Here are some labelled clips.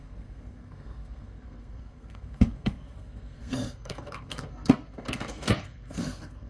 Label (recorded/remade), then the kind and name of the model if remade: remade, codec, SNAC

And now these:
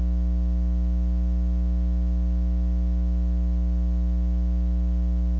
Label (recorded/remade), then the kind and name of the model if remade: recorded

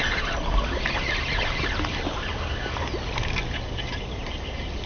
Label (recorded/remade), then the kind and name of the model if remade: recorded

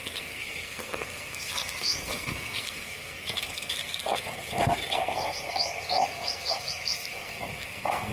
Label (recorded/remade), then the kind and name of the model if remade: remade, codec, SNAC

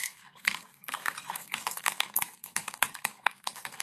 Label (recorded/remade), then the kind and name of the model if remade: remade, codec, SNAC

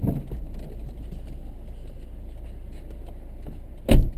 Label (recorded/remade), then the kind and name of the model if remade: recorded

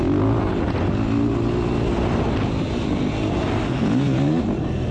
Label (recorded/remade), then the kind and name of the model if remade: recorded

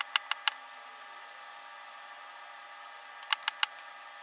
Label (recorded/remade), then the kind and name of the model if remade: recorded